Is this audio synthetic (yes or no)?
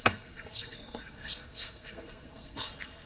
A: yes